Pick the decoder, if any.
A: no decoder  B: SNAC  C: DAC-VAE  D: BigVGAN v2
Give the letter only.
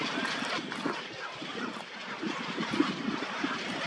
A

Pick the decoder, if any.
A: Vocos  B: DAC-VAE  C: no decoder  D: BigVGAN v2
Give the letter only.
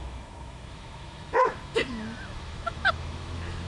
B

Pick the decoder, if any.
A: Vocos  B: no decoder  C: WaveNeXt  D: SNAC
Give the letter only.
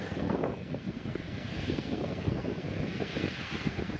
D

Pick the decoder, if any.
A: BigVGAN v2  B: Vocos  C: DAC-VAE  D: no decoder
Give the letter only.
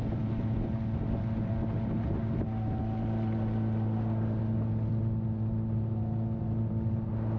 D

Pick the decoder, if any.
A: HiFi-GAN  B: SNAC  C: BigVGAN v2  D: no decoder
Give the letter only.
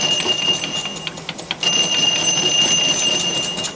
D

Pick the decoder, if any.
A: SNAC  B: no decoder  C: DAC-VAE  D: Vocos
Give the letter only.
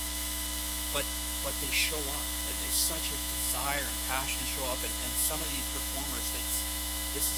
C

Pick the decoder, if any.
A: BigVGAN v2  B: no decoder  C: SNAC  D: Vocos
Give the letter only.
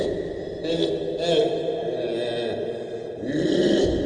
B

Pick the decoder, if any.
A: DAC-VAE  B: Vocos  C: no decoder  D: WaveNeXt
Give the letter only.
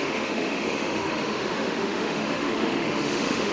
A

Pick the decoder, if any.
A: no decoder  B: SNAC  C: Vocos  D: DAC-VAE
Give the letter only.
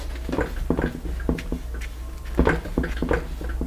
A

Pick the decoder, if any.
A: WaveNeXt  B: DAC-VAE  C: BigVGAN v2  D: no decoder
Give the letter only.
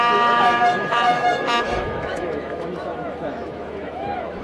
B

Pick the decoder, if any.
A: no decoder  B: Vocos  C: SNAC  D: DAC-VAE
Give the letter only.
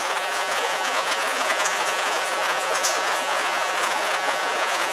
B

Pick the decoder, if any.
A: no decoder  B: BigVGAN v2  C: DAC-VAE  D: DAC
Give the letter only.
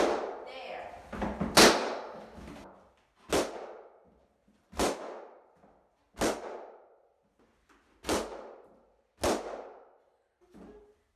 A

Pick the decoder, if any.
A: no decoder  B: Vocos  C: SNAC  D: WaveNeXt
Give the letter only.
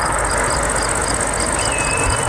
A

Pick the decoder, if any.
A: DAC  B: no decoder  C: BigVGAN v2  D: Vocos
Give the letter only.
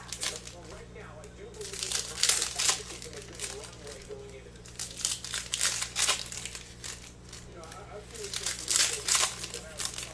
B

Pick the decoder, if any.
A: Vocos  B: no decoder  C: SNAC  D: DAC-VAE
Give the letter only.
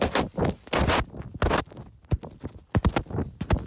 B